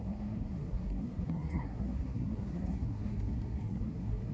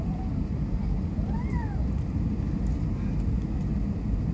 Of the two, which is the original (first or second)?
second